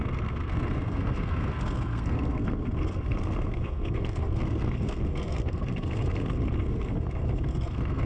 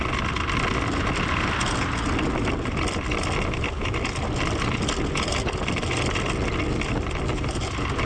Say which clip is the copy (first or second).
first